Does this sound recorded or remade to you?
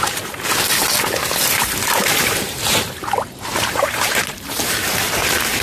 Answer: remade